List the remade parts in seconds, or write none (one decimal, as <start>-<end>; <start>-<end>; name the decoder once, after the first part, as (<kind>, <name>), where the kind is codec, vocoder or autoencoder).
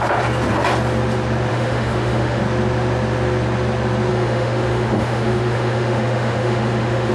1.5-2.4 (autoencoder, DAC-VAE); 4.1-7.1